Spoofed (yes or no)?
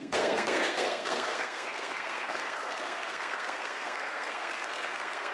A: yes